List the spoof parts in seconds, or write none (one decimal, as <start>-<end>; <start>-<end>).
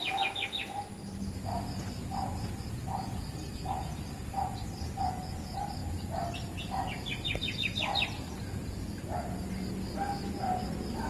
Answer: none